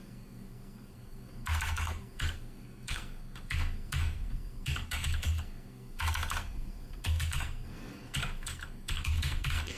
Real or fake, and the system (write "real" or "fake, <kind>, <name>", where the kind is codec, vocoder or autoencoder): fake, codec, SNAC